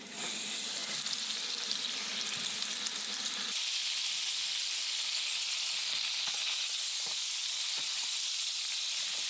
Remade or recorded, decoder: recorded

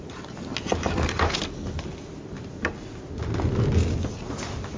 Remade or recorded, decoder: recorded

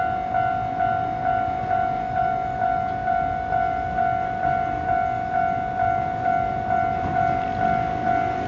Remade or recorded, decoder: recorded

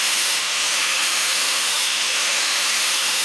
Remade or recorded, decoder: remade, autoencoder, DAC-VAE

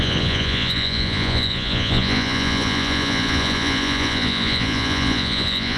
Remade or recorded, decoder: remade, vocoder, Vocos